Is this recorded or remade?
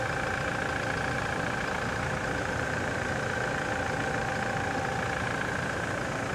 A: recorded